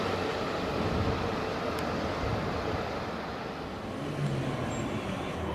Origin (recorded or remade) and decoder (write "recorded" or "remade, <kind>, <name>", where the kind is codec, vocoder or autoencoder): recorded